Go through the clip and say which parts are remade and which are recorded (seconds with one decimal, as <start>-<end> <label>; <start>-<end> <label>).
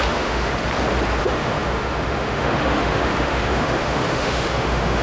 0.0-0.5 remade; 0.5-1.2 recorded; 1.2-5.0 remade